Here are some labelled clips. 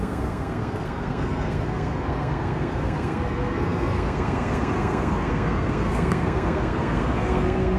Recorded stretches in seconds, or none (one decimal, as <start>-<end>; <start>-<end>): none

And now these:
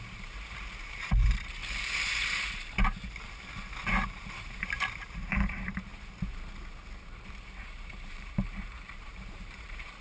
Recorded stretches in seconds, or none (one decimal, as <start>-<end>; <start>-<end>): 1.6-3.9; 5.9-7.5

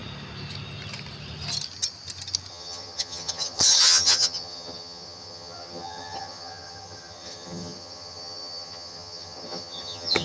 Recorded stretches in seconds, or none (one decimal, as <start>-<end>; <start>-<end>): 0.0-2.5